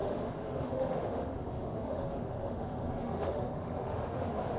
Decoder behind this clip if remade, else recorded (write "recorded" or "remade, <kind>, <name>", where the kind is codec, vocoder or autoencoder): remade, autoencoder, DAC-VAE